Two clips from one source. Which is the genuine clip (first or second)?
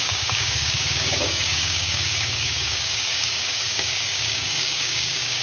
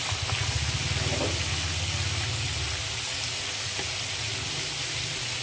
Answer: second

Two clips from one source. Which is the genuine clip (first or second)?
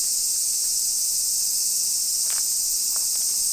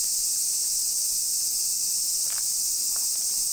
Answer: first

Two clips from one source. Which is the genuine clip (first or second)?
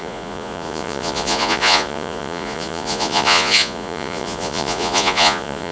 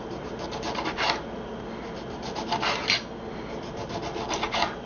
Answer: second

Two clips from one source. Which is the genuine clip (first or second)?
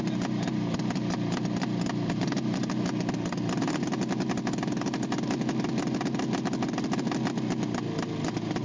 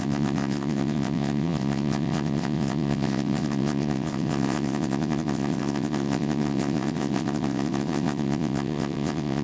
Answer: first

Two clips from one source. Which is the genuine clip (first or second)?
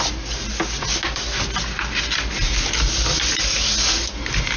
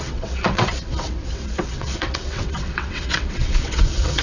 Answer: first